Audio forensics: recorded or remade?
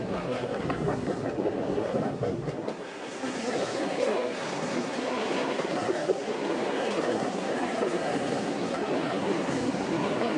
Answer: remade